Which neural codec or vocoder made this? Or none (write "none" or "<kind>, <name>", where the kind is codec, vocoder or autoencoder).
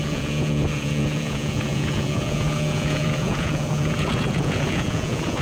vocoder, Vocos